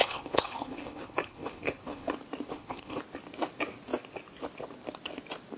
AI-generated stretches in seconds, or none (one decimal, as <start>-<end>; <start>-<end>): 0.0-2.1; 2.5-3.0